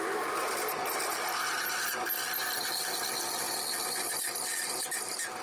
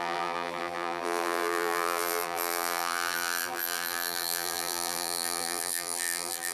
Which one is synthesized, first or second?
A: second